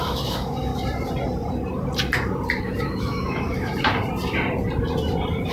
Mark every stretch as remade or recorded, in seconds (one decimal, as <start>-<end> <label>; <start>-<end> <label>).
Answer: 0.0-0.7 remade; 0.7-2.6 recorded; 2.6-3.7 remade; 3.7-5.5 recorded